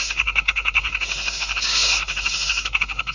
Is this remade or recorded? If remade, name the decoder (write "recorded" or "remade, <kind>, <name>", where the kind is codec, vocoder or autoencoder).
remade, codec, SNAC